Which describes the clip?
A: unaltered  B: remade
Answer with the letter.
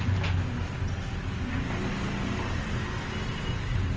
A